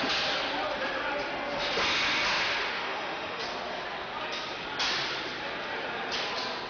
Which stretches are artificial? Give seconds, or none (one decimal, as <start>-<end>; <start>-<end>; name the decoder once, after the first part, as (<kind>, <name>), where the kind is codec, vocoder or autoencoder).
2.7-3.4 (autoencoder, DAC-VAE)